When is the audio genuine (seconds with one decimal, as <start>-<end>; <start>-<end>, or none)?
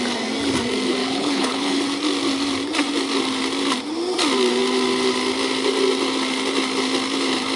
0.0-1.0; 1.8-7.6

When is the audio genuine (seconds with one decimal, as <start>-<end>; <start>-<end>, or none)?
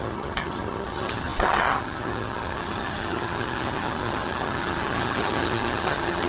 none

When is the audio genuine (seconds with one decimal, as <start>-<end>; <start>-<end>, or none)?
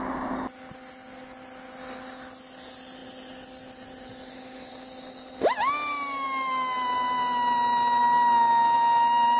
0.0-9.4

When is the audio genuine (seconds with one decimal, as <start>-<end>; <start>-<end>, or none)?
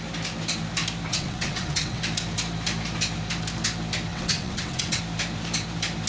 0.0-1.1; 2.0-4.1; 5.0-6.1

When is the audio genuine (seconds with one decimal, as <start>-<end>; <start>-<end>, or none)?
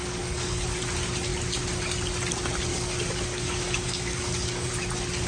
0.8-2.7; 4.7-5.3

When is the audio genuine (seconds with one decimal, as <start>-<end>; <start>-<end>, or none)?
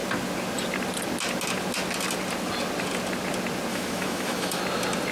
0.0-3.7; 4.6-5.1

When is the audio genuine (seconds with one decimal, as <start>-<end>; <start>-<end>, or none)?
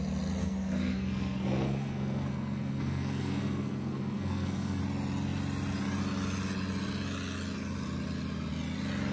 0.0-0.4; 4.8-9.1